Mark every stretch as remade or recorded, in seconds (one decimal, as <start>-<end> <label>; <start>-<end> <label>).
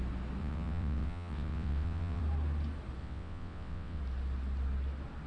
0.0-0.4 recorded; 0.4-2.2 remade; 2.2-3.0 recorded; 3.0-4.0 remade; 4.0-5.3 recorded